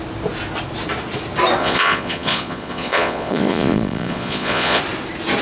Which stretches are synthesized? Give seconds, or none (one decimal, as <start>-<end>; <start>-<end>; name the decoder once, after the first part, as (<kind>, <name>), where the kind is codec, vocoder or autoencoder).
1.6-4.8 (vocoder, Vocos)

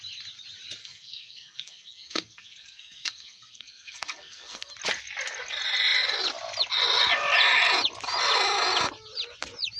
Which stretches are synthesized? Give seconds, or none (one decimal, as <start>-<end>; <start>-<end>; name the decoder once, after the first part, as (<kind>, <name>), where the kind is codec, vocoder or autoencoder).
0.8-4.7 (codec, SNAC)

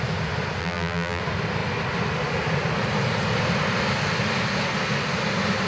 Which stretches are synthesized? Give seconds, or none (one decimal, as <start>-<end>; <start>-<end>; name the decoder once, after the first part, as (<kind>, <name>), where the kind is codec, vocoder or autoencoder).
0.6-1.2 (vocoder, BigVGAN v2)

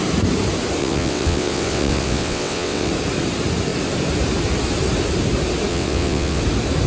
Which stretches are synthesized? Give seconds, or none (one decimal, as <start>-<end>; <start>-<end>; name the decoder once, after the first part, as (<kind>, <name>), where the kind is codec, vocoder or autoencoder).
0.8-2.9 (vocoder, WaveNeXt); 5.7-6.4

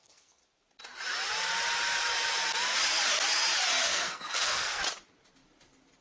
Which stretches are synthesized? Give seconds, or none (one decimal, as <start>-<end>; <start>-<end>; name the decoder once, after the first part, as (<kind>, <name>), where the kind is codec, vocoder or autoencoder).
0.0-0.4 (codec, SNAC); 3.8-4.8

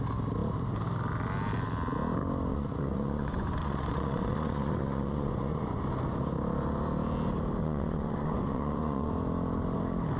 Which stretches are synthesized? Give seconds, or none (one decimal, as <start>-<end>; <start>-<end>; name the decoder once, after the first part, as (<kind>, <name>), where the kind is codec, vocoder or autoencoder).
2.5-5.8 (vocoder, Vocos); 7.6-9.1